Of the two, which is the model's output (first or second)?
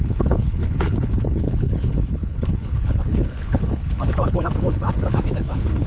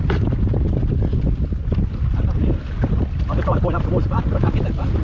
first